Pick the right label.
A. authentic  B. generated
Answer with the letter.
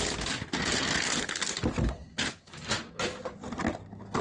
A